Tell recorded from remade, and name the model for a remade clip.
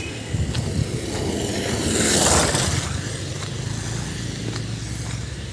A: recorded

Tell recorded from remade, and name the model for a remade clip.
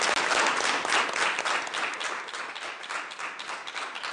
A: recorded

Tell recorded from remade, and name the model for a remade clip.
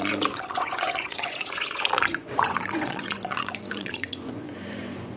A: remade, vocoder, Vocos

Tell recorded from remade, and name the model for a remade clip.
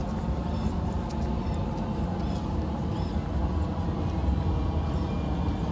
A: recorded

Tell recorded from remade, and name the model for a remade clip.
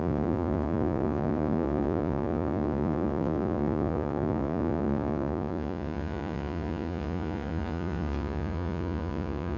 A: remade, vocoder, Vocos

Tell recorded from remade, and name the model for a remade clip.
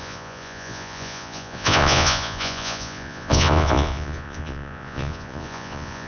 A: remade, vocoder, Vocos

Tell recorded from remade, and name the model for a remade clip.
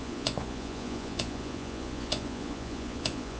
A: remade, vocoder, Vocos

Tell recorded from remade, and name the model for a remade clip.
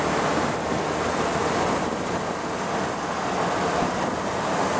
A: recorded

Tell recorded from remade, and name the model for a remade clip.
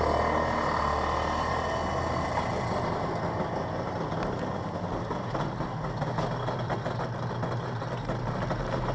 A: recorded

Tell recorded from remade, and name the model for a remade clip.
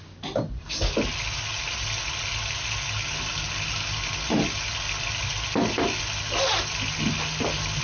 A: recorded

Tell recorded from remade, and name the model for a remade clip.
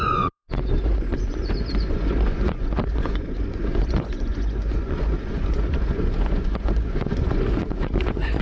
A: remade, vocoder, Vocos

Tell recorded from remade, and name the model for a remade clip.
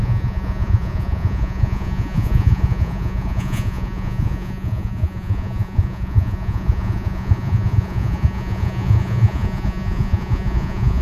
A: remade, vocoder, Vocos